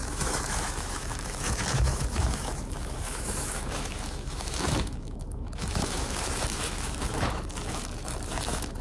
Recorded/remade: remade